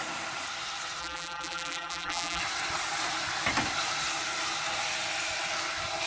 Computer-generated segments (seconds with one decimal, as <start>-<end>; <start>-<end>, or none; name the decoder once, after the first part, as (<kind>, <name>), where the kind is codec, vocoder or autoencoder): 1.0-2.4 (vocoder, BigVGAN v2)